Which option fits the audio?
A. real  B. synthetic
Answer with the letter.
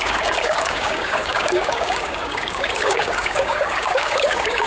B